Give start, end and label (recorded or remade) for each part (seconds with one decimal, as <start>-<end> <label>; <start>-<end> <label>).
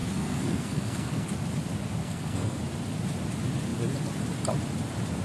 0.0-1.3 remade; 1.3-2.0 recorded; 2.0-2.6 remade; 2.6-5.2 recorded